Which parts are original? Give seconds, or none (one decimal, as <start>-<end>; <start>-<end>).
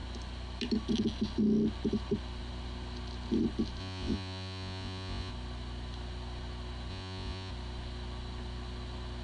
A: 0.0-3.8; 5.3-6.9; 7.5-9.2